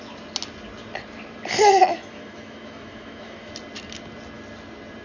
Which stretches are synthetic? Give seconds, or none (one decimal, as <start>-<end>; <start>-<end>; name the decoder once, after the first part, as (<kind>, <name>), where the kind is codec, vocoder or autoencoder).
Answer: 1.9-3.5 (autoencoder, DAC-VAE)